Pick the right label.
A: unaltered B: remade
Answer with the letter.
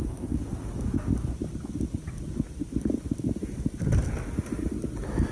A